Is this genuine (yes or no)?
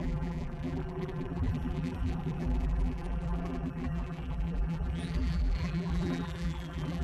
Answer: no